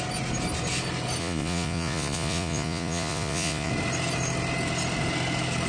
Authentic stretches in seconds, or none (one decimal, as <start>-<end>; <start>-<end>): 0.0-1.2; 3.7-5.7

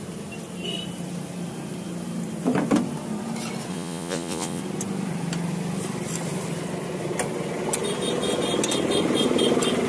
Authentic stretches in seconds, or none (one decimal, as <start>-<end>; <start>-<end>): 0.0-3.7; 4.6-9.9

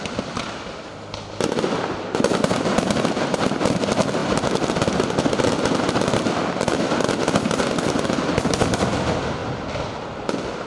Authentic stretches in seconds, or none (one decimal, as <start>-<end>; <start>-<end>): 0.0-10.7

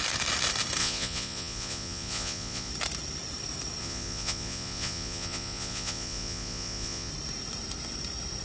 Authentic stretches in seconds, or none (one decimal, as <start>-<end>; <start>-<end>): 0.0-0.8; 2.7-3.8; 7.1-8.4

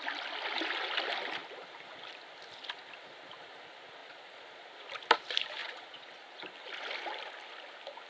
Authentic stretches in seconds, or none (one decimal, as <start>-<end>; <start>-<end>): 0.0-4.0; 4.7-5.6; 6.4-8.1